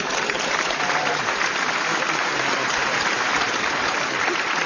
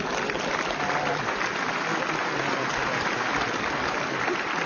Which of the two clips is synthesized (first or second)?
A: first